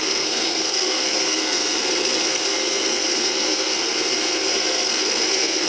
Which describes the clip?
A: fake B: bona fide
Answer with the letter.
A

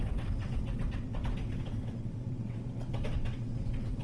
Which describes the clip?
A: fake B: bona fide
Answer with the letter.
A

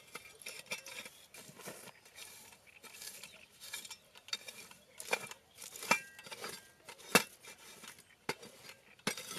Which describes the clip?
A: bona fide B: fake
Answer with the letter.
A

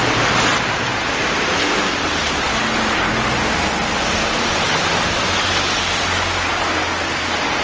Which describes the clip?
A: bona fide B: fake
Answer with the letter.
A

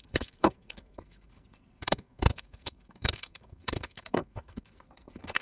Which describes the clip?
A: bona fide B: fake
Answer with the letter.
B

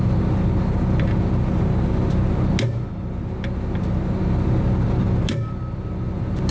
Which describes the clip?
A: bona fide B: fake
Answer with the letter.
A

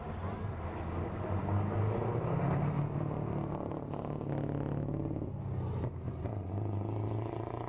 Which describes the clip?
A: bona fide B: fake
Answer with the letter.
A